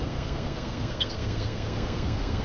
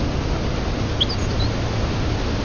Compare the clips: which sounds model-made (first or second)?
first